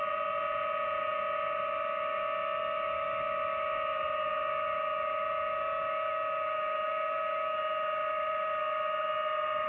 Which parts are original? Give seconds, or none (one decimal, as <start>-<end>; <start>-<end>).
0.0-9.7